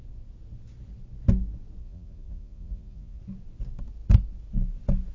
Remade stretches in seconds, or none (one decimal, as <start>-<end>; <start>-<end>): 1.8-3.2